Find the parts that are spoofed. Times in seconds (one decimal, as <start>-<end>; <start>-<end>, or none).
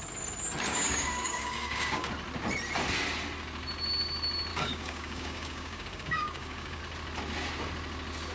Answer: 0.7-2.1; 4.5-6.8